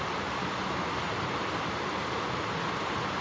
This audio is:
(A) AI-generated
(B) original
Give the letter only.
B